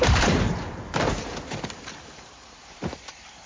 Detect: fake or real fake